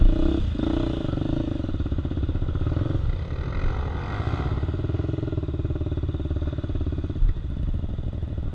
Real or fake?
real